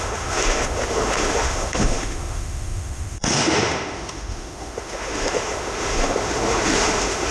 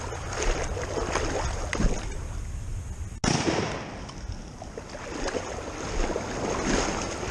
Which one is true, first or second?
second